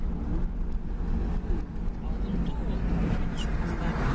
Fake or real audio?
real